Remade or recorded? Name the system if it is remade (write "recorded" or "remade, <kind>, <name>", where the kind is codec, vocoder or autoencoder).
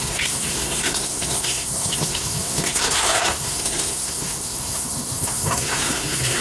remade, codec, SNAC